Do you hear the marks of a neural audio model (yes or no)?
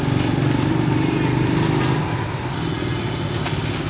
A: no